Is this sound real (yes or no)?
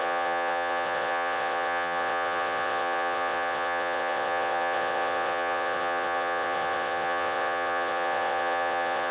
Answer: no